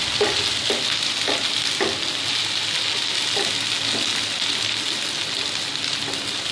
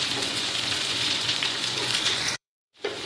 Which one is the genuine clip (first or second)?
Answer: first